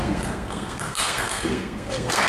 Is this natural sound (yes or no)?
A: no